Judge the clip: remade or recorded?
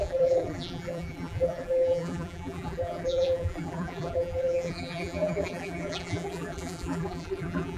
remade